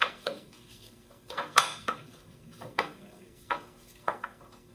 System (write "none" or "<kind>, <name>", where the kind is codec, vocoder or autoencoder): codec, SNAC